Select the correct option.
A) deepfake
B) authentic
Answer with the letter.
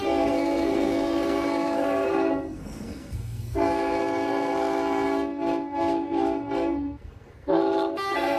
A